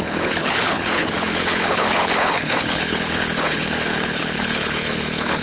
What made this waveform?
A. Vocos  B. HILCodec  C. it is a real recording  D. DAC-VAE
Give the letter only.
B